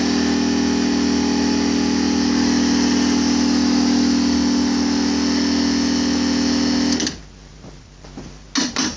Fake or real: real